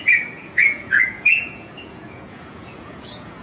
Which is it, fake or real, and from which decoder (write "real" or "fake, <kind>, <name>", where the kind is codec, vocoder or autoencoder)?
fake, vocoder, Vocos